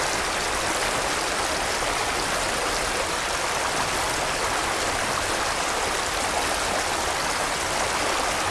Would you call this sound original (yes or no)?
yes